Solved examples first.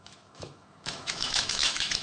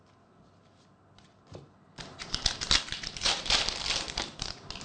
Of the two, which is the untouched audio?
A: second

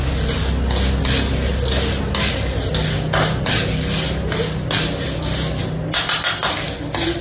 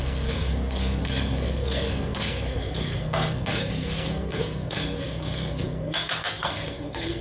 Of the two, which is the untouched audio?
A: first